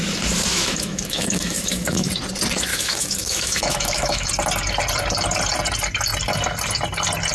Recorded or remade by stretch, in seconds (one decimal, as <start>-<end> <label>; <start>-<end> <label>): 0.0-0.5 recorded; 0.5-2.1 remade; 2.1-2.7 recorded; 2.7-4.3 remade; 4.3-7.3 recorded